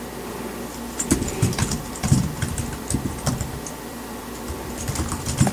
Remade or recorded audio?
remade